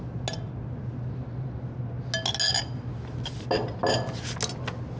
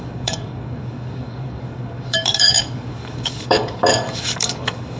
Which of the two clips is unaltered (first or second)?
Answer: first